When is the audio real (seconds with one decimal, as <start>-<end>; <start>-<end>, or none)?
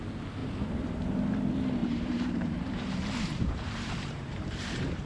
0.0-0.4; 0.9-1.8